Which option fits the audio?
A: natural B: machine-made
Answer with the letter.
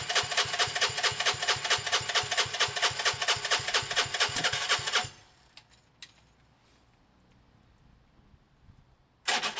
A